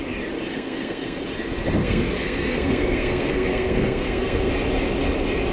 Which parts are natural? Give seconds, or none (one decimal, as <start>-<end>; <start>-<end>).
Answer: 0.0-0.5; 1.2-1.8; 4.5-5.5